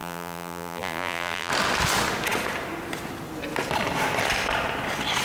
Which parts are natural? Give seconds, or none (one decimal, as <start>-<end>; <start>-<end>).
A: 1.5-5.2